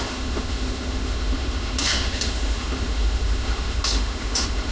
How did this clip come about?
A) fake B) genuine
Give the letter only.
A